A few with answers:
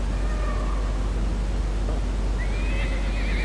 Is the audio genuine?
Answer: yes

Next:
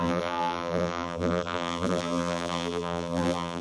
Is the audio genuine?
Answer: no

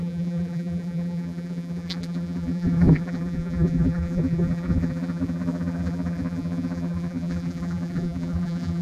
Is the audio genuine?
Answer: no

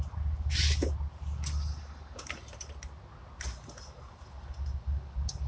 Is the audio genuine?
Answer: yes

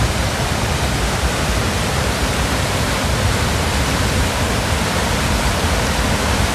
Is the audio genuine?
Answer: no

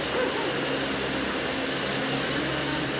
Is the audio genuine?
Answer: yes